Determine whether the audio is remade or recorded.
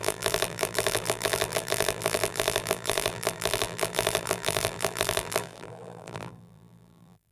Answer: remade